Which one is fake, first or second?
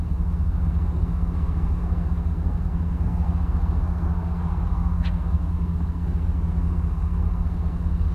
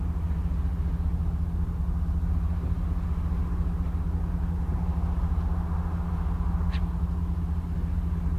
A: first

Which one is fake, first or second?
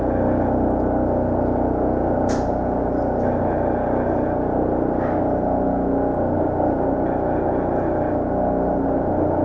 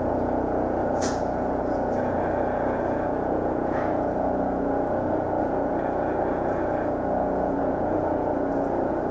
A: second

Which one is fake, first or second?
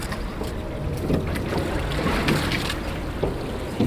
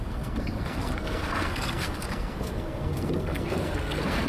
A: second